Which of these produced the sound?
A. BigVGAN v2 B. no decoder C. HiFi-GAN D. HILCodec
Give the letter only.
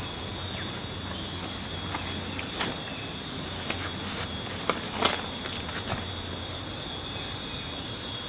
B